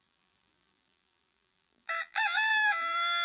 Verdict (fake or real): fake